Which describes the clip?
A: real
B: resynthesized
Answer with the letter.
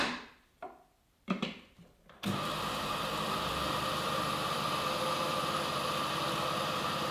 B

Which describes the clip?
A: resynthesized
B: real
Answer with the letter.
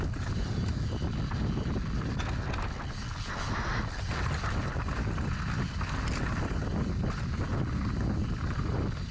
B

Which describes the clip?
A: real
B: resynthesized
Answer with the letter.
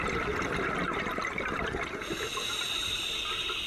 A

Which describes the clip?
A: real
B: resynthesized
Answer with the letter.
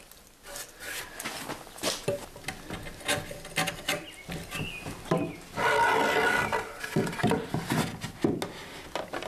A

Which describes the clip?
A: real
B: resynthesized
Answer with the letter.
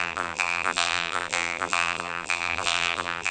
B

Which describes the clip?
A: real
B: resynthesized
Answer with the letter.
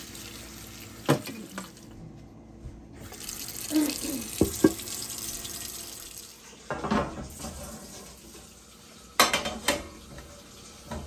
A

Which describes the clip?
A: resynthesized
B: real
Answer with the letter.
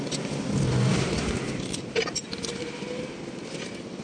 B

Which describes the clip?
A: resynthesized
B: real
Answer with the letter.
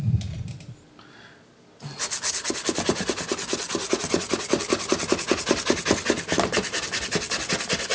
B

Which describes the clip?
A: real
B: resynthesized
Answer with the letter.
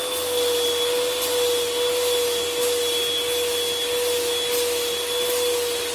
A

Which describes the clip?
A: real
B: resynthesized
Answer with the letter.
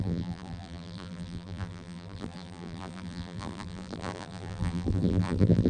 B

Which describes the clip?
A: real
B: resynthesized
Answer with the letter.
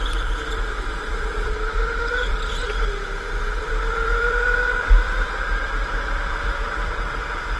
B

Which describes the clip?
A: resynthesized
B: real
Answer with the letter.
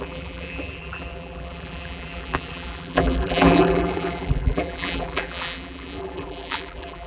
A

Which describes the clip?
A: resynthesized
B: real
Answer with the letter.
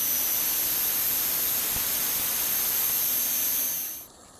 A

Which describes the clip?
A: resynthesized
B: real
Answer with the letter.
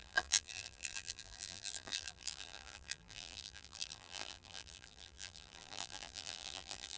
A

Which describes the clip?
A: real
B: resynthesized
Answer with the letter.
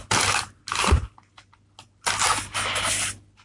A